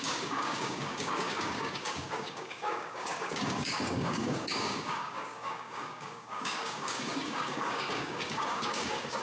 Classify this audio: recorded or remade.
remade